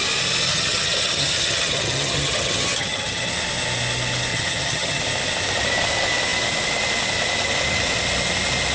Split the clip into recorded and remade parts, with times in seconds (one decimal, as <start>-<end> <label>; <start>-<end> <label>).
0.0-0.5 recorded; 0.5-3.3 remade; 3.3-4.3 recorded; 4.3-5.0 remade; 5.0-8.7 recorded